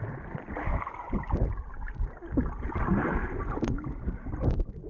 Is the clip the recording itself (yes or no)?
yes